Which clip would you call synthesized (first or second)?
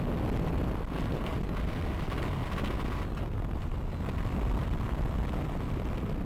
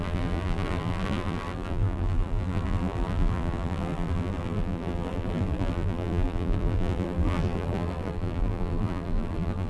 second